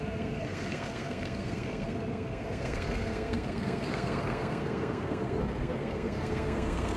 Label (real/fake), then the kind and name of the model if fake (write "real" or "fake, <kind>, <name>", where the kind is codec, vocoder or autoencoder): fake, codec, SNAC